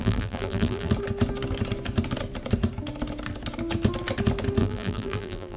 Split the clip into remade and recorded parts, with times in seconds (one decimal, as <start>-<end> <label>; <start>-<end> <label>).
0.0-0.9 remade; 0.9-4.6 recorded; 4.6-5.6 remade